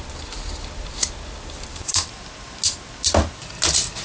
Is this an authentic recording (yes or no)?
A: yes